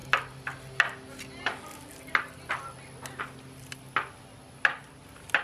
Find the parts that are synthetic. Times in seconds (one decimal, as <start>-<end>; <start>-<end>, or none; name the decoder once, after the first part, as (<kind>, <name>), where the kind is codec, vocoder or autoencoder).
none

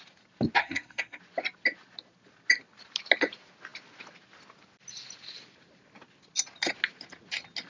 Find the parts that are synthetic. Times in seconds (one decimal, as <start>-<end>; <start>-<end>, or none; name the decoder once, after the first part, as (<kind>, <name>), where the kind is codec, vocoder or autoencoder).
0.6-1.2 (codec, SNAC)

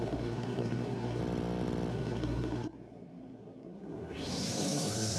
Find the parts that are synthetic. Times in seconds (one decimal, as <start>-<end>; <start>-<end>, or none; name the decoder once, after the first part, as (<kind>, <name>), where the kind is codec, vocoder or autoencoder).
0.0-1.2 (codec, SNAC); 1.9-5.2

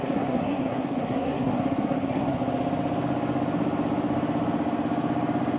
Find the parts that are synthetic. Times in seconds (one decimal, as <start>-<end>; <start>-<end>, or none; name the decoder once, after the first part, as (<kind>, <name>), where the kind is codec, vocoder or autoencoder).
0.0-2.4 (codec, SNAC)

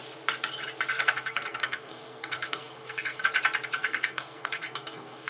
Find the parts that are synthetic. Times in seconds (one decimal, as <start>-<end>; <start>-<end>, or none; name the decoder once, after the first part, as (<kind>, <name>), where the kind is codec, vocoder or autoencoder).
0.9-3.4 (codec, SNAC); 3.8-5.3

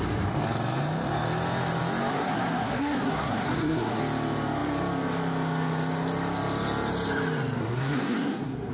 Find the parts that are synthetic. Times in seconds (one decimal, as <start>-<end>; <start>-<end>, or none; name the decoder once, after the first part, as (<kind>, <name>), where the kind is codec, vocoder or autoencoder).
2.1-4.0 (codec, SNAC); 7.6-8.7